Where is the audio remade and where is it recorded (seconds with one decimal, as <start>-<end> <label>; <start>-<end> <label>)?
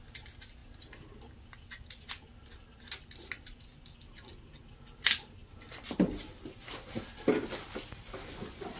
0.0-8.8 recorded